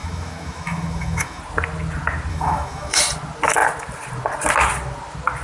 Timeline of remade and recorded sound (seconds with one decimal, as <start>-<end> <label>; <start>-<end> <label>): 0.0-1.4 remade; 1.4-2.3 recorded; 2.3-3.0 remade; 3.0-5.4 recorded